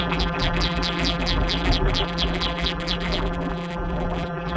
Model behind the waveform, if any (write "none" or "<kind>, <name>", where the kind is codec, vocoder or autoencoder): vocoder, BigVGAN v2